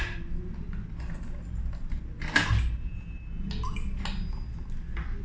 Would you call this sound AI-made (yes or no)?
no